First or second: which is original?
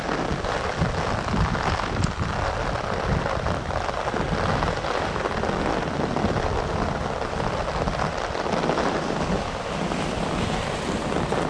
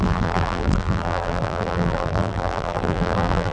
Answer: first